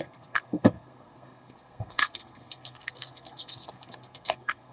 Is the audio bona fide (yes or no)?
no